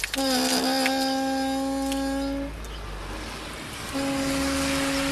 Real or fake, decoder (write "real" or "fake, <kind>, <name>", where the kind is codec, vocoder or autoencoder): real